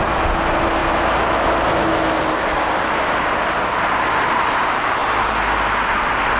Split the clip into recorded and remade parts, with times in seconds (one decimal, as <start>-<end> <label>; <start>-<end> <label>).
0.0-6.4 recorded